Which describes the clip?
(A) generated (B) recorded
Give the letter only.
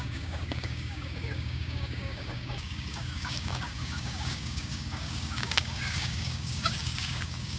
A